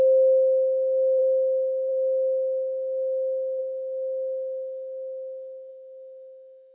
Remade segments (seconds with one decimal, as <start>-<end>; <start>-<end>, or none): 0.0-6.7